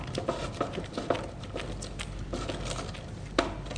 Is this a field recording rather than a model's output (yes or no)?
yes